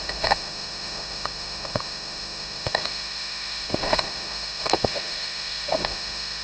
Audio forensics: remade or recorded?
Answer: remade